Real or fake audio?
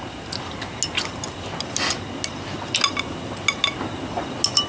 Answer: real